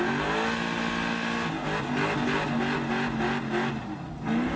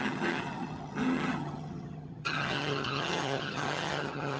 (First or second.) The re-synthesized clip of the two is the second